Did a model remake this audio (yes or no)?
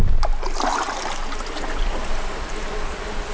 no